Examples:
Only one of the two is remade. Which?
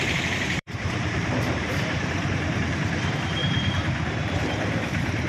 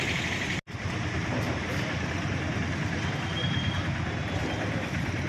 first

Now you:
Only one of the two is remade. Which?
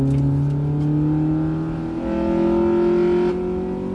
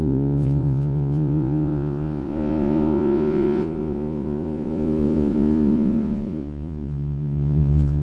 second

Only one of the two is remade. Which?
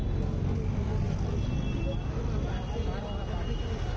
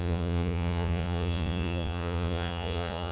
second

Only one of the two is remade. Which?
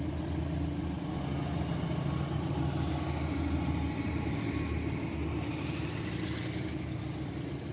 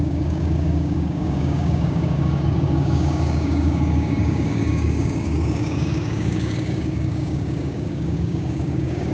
second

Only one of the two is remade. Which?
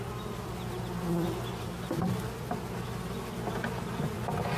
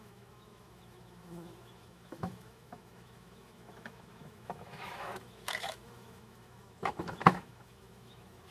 second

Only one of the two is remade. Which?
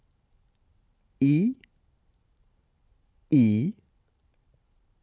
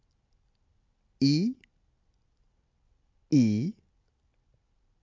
first